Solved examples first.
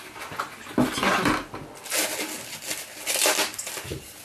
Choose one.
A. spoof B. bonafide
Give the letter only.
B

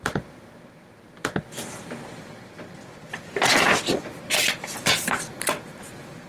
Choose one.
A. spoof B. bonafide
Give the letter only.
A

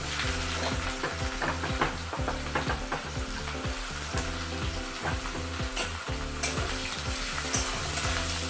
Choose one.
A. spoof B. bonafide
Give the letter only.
B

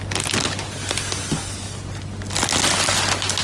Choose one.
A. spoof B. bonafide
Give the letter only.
B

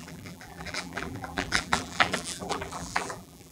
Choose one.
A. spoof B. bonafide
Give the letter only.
A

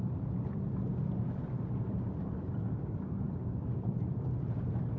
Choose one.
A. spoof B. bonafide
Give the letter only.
A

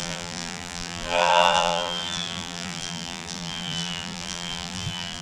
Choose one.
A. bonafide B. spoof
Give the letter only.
B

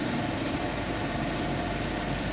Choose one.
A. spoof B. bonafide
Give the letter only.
A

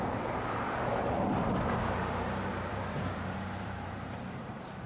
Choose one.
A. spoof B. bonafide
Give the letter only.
A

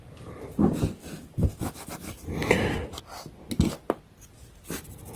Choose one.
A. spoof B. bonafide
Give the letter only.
B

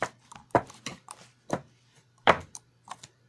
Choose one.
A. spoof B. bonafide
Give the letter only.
A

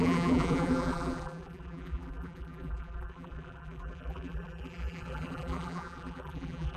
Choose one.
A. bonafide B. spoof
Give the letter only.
B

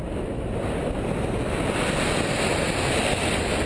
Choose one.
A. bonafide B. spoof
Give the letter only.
A